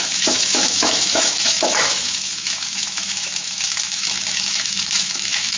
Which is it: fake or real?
fake